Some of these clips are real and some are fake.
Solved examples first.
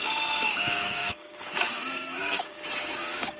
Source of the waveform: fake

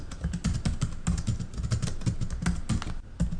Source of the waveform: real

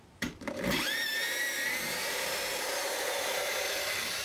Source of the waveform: fake